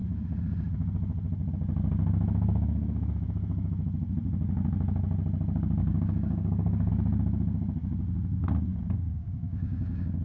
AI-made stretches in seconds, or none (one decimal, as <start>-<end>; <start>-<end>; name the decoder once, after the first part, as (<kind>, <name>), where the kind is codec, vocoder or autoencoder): 5.8-6.9 (codec, DAC); 8.7-10.2